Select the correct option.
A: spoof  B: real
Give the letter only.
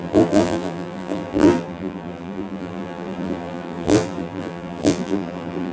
A